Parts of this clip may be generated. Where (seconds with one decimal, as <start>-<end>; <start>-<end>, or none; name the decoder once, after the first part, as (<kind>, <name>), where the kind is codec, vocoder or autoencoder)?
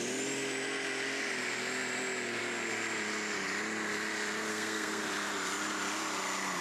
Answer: 4.5-5.0 (codec, SNAC)